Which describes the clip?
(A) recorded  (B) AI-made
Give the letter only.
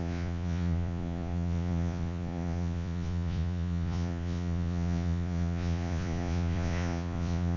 B